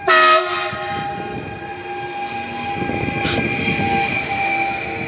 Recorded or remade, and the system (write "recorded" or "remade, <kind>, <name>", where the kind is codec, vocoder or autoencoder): recorded